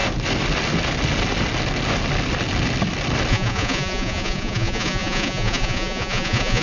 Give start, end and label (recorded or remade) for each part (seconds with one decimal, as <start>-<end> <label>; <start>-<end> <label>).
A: 0.0-3.3 recorded; 3.3-6.6 remade